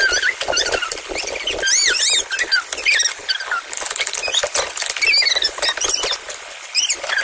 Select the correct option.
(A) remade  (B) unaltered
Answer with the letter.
B